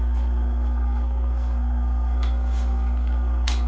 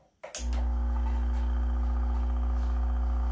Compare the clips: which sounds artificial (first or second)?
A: first